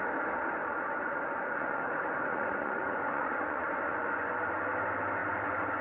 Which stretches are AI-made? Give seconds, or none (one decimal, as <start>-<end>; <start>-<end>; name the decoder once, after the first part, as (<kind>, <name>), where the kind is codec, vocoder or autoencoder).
0.6-1.8 (vocoder, Vocos); 2.3-4.3; 5.2-5.8